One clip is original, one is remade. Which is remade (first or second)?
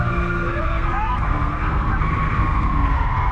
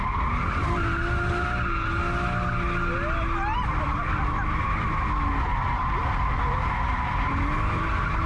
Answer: first